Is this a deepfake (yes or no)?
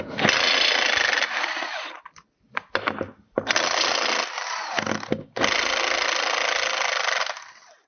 no